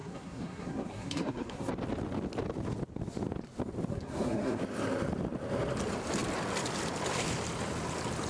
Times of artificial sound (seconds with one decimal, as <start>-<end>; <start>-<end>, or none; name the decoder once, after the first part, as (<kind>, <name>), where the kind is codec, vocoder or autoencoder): 0.0-1.7 (codec, SNAC); 3.9-4.6